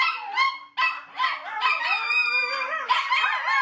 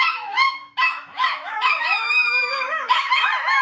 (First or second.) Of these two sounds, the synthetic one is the second